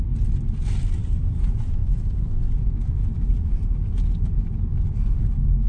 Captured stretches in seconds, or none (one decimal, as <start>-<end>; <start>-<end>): 0.0-5.7